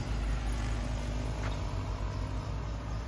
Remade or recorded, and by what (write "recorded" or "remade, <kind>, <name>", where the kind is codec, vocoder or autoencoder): recorded